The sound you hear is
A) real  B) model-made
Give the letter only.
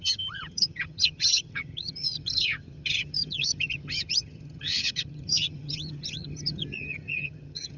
B